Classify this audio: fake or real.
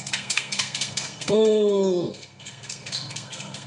fake